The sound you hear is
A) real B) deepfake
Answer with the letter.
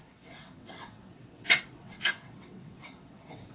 B